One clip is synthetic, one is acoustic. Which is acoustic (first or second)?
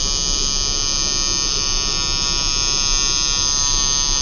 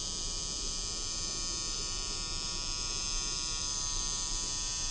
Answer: first